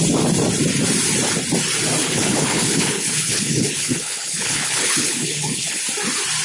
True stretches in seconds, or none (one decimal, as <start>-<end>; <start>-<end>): 0.0-2.0; 5.8-6.4

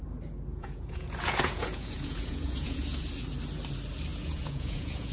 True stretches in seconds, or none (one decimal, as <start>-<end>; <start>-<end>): 0.0-0.5; 3.1-4.1

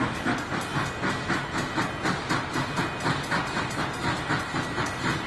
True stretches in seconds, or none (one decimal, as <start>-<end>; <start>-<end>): 0.0-5.3

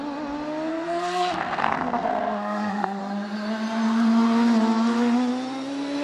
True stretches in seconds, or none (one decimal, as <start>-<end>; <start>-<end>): 0.0-0.7; 3.0-6.0

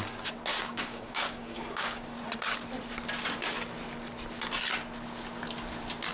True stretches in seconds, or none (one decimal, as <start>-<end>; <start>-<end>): 0.0-0.5; 2.2-6.1